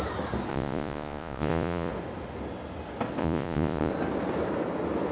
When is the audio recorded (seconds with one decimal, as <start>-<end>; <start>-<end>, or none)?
0.0-0.5; 1.9-3.2; 3.9-5.1